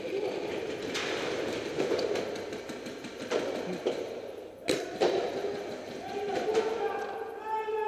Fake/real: real